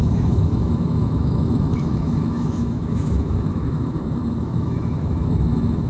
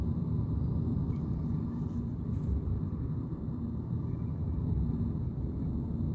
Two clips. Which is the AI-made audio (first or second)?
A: first